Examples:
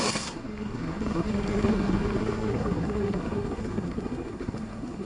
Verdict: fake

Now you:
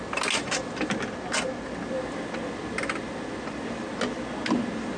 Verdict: real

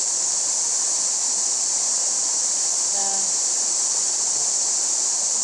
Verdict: real